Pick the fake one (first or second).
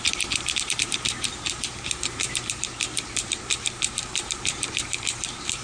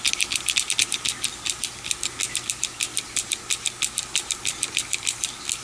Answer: first